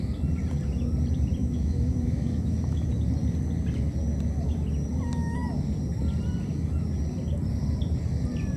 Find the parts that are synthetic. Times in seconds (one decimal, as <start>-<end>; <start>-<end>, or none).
1.4-2.8